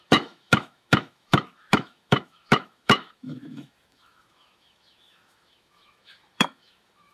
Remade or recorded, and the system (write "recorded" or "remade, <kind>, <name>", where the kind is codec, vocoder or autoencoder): remade, autoencoder, DAC-VAE